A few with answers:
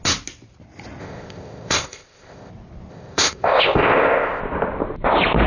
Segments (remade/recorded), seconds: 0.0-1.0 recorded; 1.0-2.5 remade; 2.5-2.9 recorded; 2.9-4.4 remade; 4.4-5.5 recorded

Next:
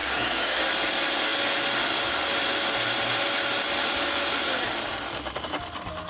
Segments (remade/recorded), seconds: 0.0-0.6 remade; 0.6-6.1 recorded

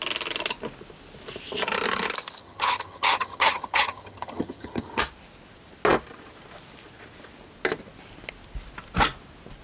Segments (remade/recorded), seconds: 0.0-2.4 recorded; 2.4-5.0 remade; 5.0-9.6 recorded

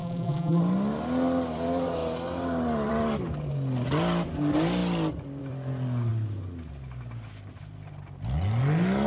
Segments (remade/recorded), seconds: 0.0-0.6 remade; 0.6-9.1 recorded

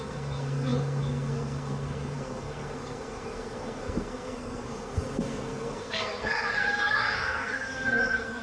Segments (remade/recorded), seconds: 0.0-8.4 remade